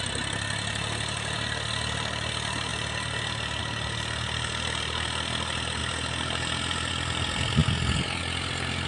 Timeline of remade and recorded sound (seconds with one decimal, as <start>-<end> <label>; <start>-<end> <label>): 0.0-8.9 recorded